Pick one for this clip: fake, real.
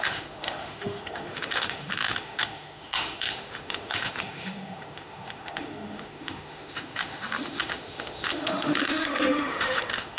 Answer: fake